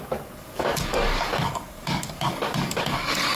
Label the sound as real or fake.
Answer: fake